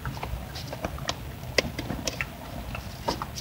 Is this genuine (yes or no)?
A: yes